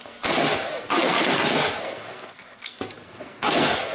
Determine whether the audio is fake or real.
fake